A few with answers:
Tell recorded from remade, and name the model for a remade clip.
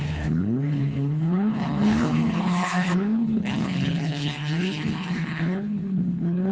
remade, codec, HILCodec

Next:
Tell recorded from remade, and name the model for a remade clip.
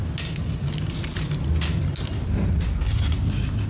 recorded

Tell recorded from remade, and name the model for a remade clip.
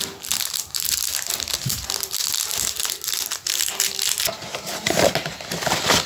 recorded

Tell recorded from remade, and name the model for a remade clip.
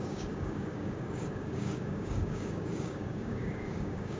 remade, codec, DAC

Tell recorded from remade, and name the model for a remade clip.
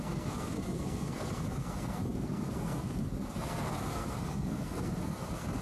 remade, codec, SNAC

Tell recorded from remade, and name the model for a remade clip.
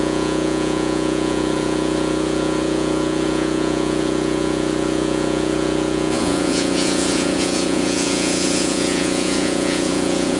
remade, vocoder, Vocos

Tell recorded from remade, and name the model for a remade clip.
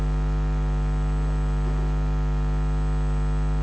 recorded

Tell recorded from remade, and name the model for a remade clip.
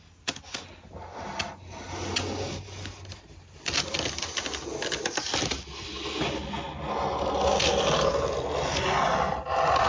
recorded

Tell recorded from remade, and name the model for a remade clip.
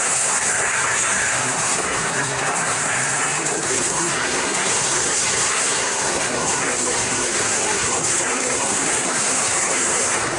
remade, codec, SNAC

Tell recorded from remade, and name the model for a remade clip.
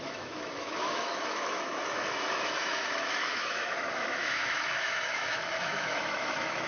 remade, autoencoder, DAC-VAE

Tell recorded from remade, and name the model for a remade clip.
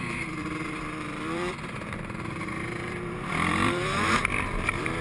remade, vocoder, BigVGAN v2